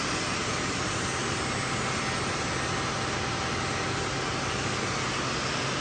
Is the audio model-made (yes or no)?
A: no